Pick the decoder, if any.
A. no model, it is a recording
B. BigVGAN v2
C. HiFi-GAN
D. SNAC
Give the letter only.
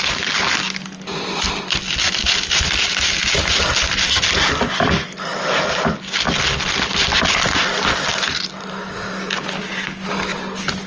A